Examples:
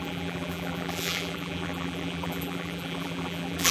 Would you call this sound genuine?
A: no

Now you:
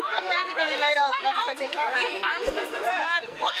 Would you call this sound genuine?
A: no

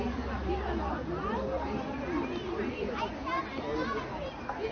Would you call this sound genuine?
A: yes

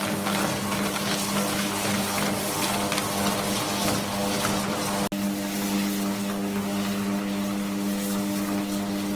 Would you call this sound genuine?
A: yes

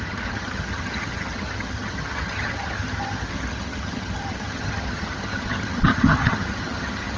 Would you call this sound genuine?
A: no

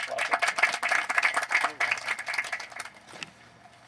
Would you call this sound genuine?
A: yes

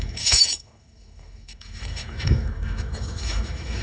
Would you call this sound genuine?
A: no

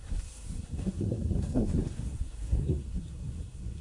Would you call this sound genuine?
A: no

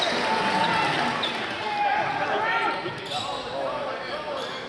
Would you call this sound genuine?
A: yes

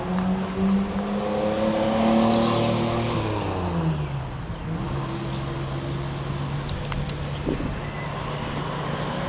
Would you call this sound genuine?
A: yes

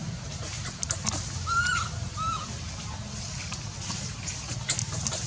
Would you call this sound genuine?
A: yes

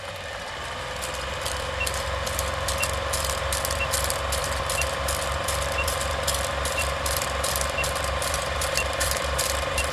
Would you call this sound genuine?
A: no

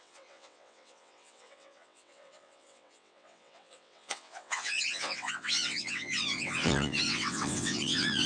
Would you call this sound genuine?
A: no